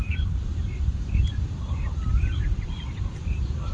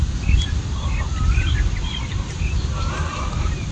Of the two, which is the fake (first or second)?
first